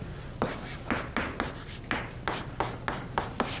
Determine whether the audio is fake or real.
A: real